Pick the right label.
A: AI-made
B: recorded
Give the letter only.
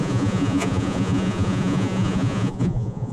A